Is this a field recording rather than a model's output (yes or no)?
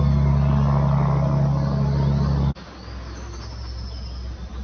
yes